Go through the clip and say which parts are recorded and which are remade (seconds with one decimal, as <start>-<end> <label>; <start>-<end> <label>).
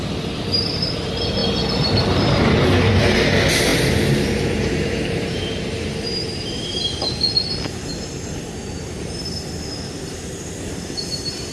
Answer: 0.0-3.7 recorded; 3.7-7.2 remade; 7.2-7.9 recorded; 7.9-9.2 remade; 9.2-11.5 recorded